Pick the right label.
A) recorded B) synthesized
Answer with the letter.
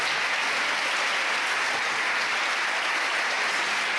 A